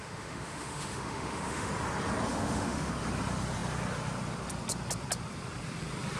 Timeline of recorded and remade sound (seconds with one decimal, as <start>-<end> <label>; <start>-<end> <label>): 0.0-1.7 remade; 1.7-2.3 recorded; 2.3-2.9 remade; 2.9-6.2 recorded